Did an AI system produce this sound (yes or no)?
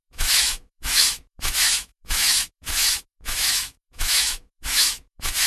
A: yes